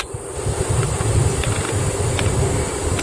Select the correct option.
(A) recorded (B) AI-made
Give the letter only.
A